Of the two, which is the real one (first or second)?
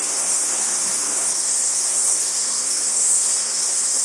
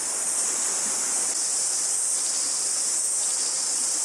second